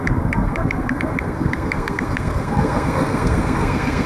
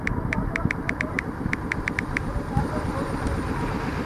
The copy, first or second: first